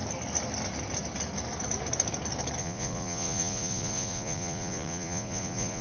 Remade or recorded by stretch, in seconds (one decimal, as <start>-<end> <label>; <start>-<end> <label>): 0.0-2.6 recorded; 2.6-5.8 remade